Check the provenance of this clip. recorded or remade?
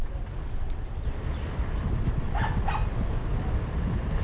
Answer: recorded